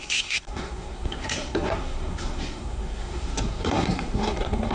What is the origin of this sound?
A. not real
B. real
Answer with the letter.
A